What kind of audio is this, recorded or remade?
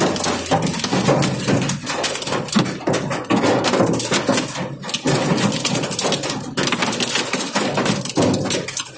recorded